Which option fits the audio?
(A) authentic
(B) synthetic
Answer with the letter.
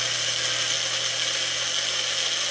A